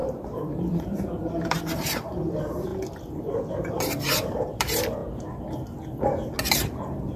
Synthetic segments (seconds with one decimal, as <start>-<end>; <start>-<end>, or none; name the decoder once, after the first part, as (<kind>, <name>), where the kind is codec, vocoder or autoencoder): 0.0-2.7 (vocoder, BigVGAN v2); 3.5-5.0; 6.4-7.2